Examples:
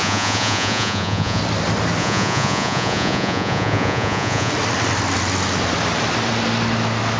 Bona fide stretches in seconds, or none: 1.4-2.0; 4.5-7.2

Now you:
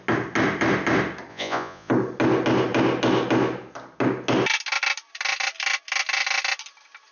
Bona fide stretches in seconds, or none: 0.0-1.3; 1.9-7.1

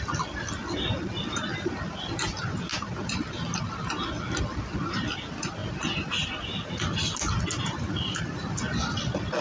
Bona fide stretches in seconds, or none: 0.0-9.4